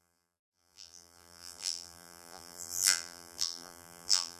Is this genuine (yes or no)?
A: no